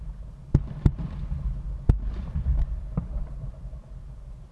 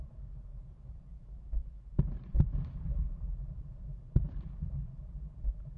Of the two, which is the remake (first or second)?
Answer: second